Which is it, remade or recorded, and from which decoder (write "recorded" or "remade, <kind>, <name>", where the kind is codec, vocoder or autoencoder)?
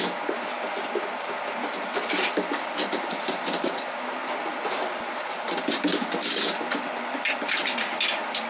recorded